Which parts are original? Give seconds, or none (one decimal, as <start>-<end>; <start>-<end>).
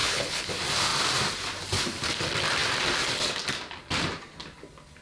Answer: 0.5-5.0